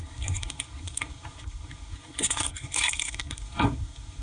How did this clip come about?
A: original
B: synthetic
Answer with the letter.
B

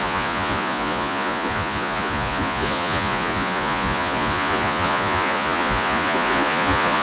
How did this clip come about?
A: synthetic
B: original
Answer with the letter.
A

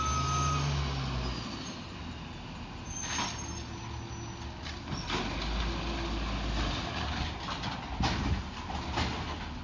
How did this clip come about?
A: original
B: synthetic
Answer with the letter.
A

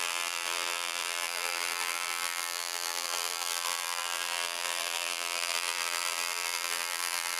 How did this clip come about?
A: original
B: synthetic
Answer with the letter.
B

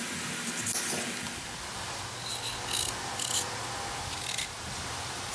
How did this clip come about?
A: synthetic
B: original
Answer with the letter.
B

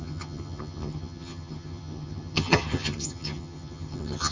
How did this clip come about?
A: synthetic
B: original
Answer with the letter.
A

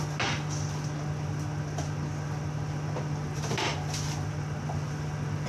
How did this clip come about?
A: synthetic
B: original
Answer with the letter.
B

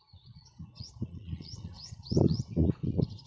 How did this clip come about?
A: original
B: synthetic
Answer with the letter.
B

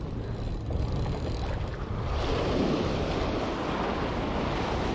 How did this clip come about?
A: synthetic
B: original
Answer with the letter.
B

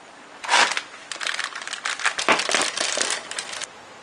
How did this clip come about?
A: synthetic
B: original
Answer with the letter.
B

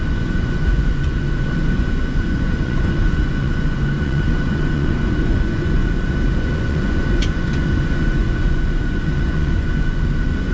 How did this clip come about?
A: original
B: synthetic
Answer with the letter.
B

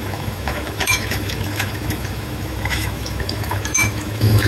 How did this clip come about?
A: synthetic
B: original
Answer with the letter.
A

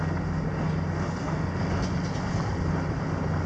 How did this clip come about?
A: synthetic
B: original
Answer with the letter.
B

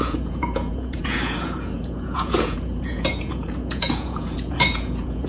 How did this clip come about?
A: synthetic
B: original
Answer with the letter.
A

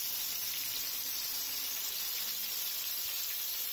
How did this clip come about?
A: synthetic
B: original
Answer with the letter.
A